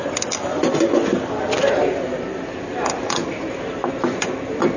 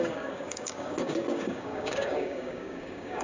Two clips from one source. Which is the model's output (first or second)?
second